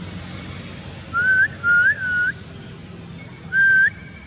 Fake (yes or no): no